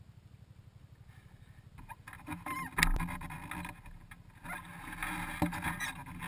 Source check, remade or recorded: recorded